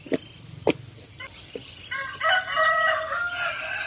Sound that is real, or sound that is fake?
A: real